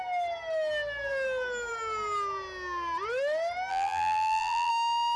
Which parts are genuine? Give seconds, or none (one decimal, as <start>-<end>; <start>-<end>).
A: 0.0-3.7; 4.7-5.2